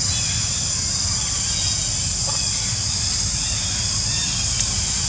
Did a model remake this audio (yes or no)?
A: no